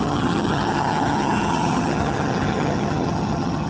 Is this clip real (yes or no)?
no